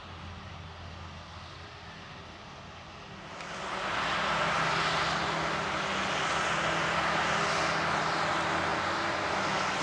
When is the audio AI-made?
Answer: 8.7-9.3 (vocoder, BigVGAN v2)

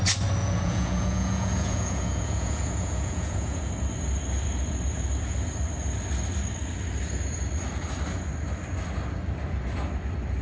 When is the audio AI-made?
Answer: 0.4-3.7 (vocoder, Vocos)

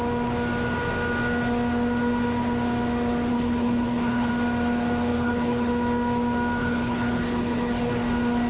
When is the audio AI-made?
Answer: 3.3-4.3 (codec, HILCodec); 5.1-5.7; 6.6-7.9